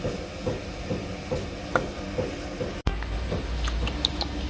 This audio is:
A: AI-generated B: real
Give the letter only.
B